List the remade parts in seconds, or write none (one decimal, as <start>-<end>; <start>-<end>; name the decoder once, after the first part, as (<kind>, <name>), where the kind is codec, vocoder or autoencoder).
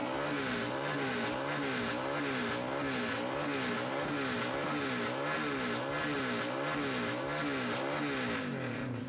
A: none